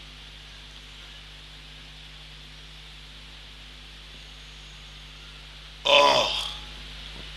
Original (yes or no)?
yes